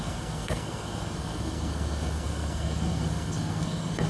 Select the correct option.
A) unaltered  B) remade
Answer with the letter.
B